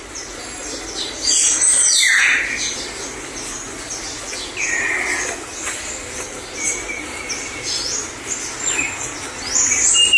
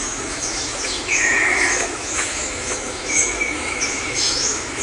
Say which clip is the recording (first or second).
first